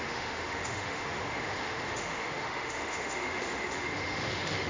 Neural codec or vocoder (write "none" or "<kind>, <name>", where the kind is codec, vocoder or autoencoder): autoencoder, DAC-VAE